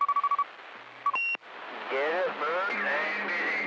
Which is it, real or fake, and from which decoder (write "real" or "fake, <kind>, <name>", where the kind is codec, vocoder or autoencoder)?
real